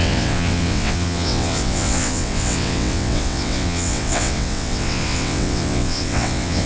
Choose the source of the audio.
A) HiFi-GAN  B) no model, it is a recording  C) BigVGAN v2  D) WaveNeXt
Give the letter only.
D